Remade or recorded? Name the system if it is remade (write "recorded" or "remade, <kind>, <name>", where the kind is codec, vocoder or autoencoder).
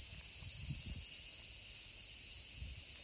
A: recorded